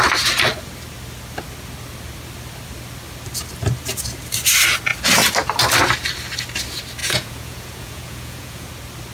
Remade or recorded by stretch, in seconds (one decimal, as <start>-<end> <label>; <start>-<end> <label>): 0.0-7.0 recorded; 7.0-8.7 remade; 8.7-9.1 recorded